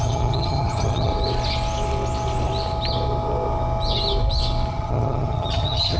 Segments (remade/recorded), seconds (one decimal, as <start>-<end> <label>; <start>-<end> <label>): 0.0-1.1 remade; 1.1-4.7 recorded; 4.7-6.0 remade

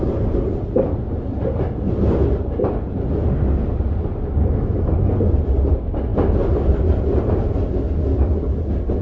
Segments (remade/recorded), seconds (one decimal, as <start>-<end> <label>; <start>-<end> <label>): 0.0-9.0 recorded

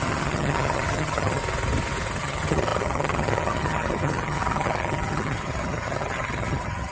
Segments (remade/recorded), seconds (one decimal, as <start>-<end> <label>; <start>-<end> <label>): 0.0-1.4 remade; 1.4-2.2 recorded; 2.2-6.9 remade